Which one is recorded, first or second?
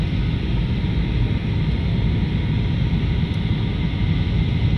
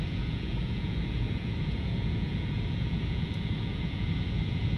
first